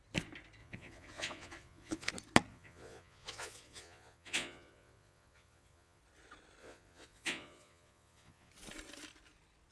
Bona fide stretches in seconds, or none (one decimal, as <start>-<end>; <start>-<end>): 0.0-0.6; 2.1-2.5; 6.0-6.6; 8.5-9.7